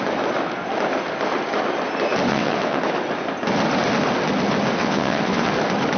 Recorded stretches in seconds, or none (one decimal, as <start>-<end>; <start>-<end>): 0.0-2.3; 2.8-4.8; 5.5-6.0